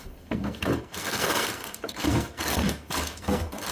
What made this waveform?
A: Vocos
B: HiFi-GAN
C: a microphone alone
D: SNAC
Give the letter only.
D